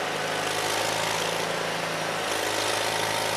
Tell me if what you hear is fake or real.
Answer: real